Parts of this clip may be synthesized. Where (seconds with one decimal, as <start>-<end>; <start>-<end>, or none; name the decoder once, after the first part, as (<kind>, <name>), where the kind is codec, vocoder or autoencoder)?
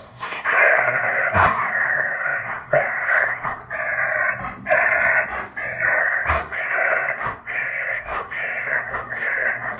0.0-3.6 (codec, SNAC); 6.0-9.8